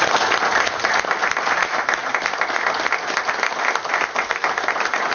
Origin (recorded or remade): recorded